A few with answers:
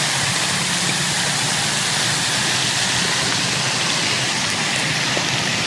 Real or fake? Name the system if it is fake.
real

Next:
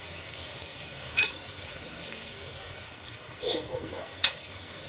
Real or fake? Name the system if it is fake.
fake, codec, SNAC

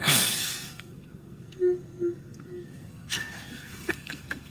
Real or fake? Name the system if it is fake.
fake, codec, SNAC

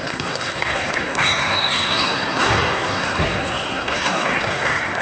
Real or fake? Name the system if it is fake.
fake, codec, SNAC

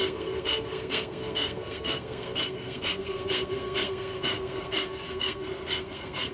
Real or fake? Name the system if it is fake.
fake, codec, SNAC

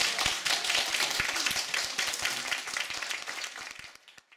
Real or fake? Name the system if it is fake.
real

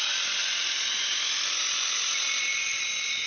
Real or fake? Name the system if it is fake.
real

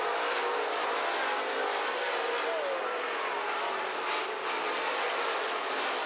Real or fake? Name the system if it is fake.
real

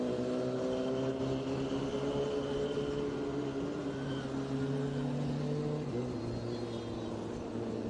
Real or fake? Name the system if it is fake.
real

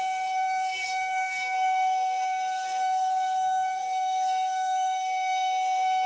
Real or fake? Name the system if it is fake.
fake, codec, SNAC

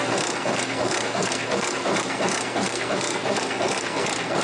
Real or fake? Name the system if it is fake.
fake, codec, SNAC